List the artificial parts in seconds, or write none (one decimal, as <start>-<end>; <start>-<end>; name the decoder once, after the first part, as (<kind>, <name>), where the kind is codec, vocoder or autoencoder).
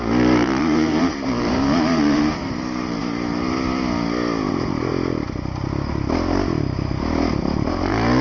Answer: 0.0-3.0 (vocoder, BigVGAN v2); 4.5-4.9; 7.4-8.2